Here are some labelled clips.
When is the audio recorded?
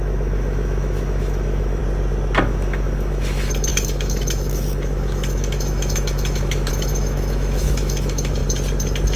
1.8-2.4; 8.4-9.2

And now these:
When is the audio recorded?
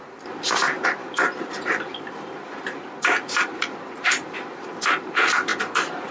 1.0-2.1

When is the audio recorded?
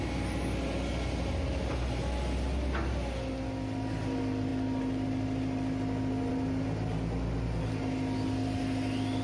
0.0-9.2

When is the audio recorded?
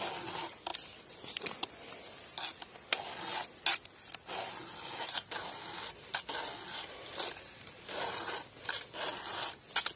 0.0-10.0